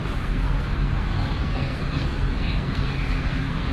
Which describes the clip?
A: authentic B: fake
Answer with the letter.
B